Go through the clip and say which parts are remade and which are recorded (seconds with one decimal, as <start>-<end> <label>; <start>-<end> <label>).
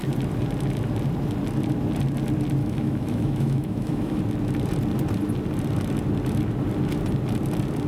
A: 0.0-2.6 recorded; 2.6-4.2 remade; 4.2-7.9 recorded